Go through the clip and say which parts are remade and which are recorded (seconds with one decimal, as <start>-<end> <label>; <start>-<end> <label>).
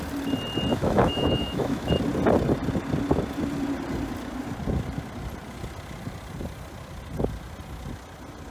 0.0-0.7 recorded; 0.7-1.9 remade; 1.9-8.5 recorded